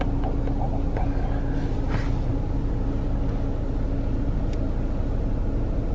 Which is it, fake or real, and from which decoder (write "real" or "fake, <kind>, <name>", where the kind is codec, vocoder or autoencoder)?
real